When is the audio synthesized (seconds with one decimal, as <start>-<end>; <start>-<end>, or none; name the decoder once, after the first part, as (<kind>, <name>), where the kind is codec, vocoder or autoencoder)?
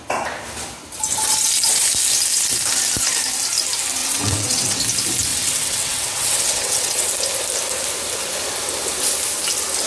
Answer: 4.0-4.8 (vocoder, WaveNeXt); 5.3-7.1